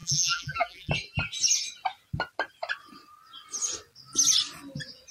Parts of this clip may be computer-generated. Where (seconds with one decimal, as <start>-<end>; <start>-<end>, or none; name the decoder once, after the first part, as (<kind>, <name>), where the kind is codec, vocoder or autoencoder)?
0.0-0.9 (vocoder, BigVGAN v2)